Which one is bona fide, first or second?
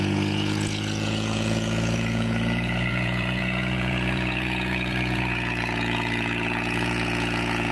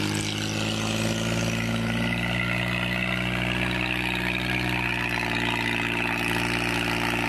second